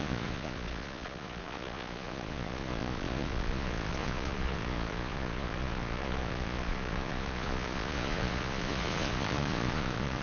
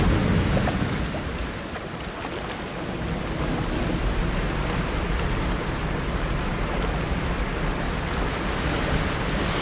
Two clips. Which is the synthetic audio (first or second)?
first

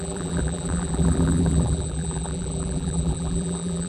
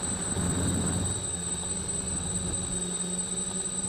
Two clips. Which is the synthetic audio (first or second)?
first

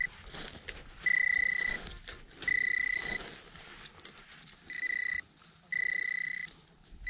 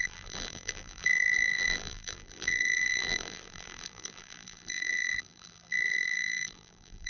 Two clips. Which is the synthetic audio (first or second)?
second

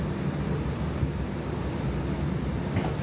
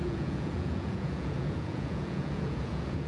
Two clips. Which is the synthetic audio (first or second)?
second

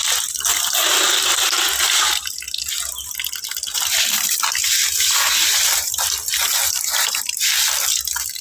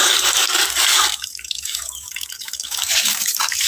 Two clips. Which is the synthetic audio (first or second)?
second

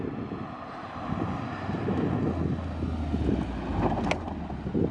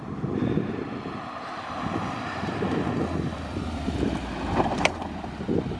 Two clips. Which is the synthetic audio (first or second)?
second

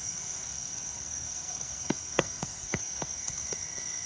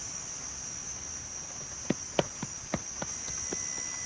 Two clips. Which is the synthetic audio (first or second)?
first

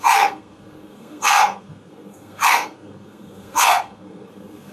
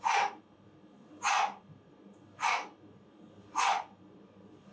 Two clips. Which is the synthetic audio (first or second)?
first